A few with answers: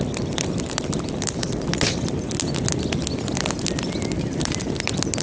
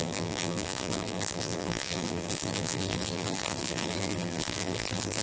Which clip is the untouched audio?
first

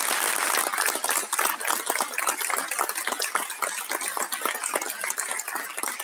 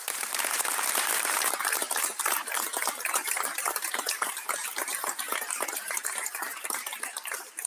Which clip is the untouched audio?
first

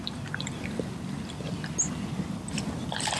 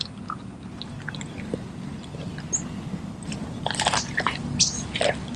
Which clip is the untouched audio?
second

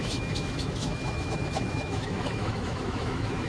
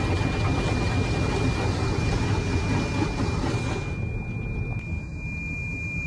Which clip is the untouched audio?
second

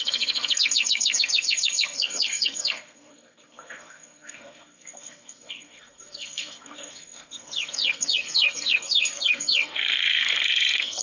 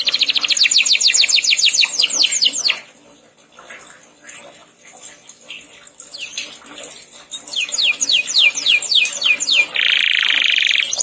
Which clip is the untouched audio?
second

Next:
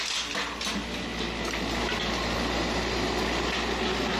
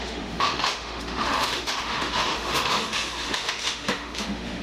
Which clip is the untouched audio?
first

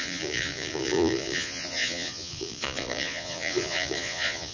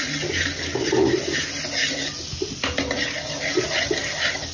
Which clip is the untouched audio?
second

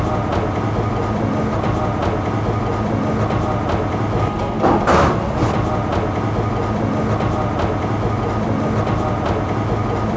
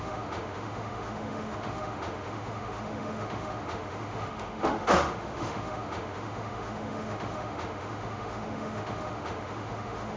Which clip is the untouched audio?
first